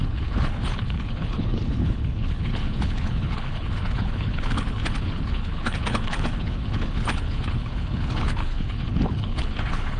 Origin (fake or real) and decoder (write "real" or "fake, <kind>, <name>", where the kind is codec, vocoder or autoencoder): fake, codec, HILCodec